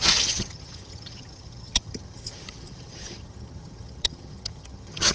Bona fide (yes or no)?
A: no